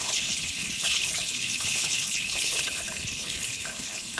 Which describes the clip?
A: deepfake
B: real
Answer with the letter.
A